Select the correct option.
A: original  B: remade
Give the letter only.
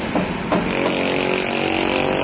A